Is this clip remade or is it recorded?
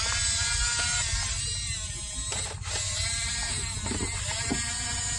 recorded